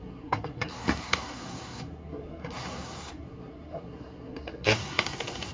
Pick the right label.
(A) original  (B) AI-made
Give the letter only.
B